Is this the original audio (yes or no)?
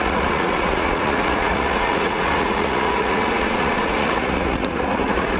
no